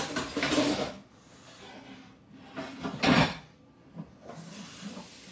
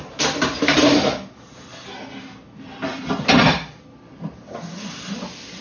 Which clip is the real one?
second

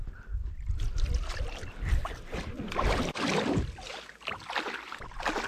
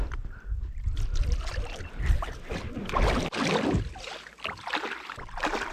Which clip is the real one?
second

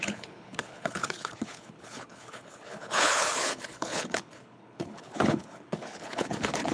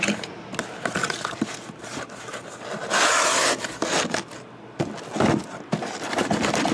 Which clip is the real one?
second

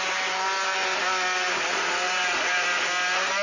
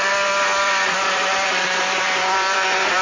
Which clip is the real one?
first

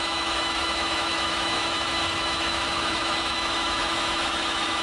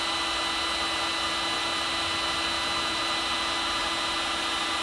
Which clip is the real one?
second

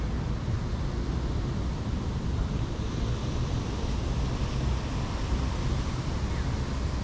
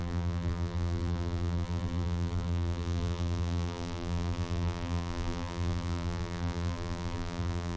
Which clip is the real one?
first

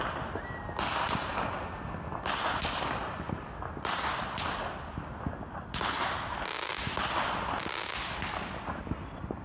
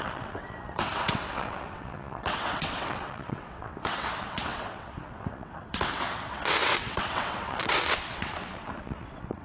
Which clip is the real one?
first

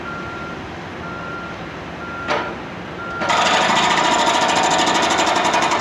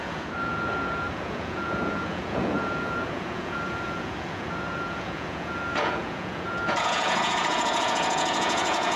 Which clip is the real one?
first